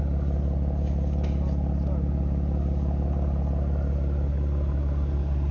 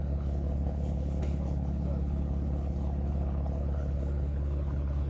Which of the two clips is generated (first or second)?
second